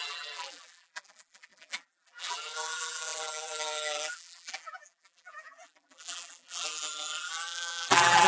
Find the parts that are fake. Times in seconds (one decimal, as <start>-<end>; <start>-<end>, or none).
0.0-8.3